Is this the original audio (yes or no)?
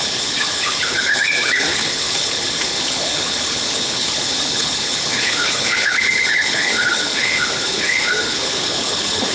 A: no